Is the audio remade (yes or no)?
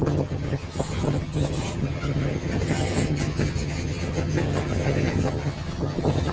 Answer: yes